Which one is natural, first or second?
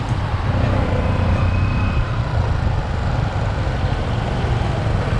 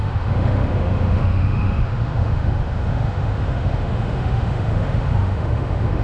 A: first